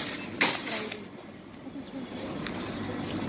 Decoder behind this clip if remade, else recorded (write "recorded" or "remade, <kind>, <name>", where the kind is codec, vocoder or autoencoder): recorded